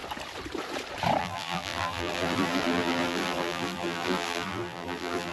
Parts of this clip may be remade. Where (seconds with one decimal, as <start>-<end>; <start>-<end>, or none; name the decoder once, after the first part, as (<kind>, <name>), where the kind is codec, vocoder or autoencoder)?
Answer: 1.2-5.3 (vocoder, BigVGAN v2)